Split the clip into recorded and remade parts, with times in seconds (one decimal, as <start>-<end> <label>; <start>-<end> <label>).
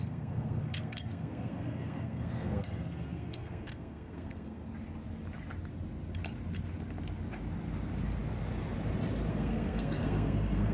0.0-4.6 remade; 4.6-9.3 recorded; 9.3-10.7 remade